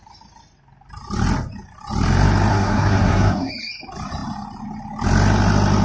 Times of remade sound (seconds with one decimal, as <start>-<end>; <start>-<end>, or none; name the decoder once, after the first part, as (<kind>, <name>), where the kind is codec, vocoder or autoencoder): 2.5-3.5 (codec, SNAC)

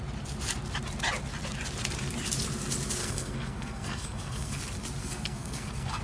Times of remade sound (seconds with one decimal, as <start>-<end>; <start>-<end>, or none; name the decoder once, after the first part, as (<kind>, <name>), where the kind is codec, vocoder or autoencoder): 3.0-4.6 (codec, SNAC); 5.0-6.0

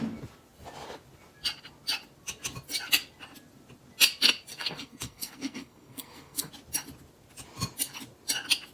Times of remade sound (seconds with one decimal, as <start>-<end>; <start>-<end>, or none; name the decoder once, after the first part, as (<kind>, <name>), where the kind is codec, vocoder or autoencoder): 4.5-6.5 (codec, SNAC)

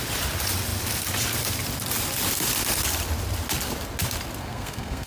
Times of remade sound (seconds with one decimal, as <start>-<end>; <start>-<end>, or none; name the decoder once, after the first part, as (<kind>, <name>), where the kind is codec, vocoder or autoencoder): 4.4-5.1 (codec, SNAC)

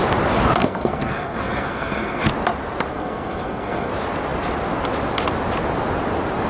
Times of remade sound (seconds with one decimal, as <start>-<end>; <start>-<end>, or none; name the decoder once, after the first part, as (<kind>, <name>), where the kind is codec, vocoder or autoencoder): 0.6-2.2 (codec, SNAC); 2.9-3.9

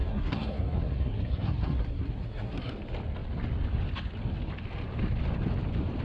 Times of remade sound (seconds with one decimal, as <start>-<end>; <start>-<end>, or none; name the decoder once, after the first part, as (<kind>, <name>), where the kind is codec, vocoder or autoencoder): 0.0-2.7 (codec, SNAC)

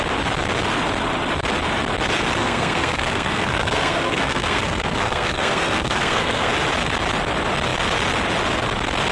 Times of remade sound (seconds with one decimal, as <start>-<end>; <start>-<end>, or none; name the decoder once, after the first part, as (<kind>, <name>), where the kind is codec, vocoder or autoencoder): 2.4-6.5 (codec, SNAC)

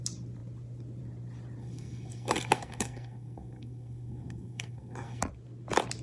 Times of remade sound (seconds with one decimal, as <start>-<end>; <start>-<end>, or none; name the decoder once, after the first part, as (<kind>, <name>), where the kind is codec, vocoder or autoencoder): 1.6-5.2 (codec, SNAC)